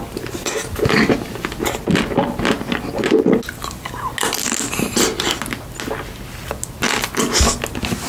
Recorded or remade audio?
recorded